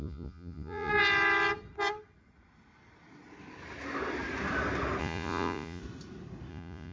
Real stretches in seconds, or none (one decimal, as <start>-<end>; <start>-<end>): 0.9-5.0; 5.8-6.5